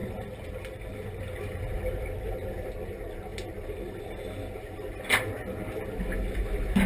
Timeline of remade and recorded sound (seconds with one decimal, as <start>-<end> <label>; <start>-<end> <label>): 0.0-6.9 recorded